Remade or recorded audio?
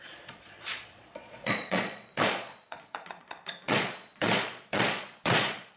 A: remade